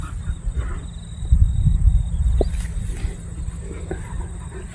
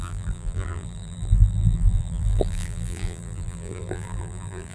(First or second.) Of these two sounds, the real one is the first